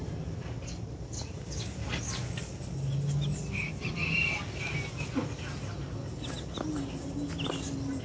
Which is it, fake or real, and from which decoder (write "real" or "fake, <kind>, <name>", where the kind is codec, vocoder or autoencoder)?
real